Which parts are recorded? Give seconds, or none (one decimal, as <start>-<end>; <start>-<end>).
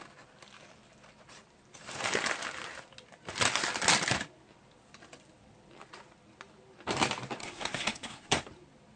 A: 0.0-7.4; 8.4-9.0